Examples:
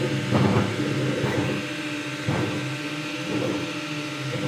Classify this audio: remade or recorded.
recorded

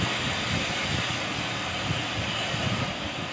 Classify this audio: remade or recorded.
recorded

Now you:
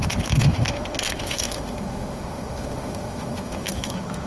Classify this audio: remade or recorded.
remade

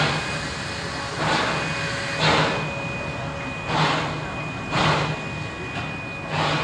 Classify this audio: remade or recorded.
recorded